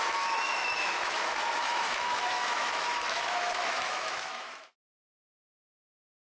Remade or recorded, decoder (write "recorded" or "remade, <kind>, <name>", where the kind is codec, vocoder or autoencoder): remade, autoencoder, DAC-VAE